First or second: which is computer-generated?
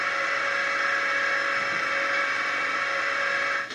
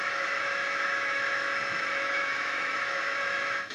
second